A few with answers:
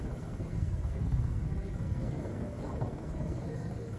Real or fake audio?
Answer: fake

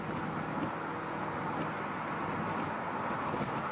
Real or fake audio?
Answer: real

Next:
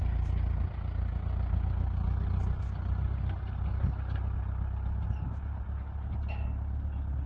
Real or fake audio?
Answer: real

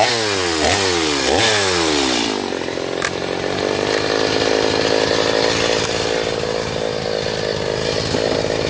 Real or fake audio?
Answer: real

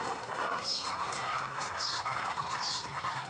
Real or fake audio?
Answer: fake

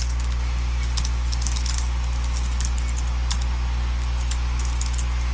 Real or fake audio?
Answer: real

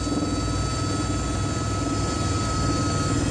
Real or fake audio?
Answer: real